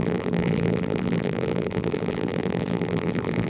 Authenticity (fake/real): fake